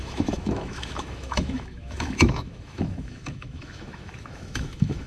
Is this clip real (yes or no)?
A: no